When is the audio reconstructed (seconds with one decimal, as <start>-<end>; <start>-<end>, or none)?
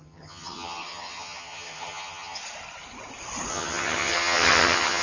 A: 0.0-2.4; 3.5-5.0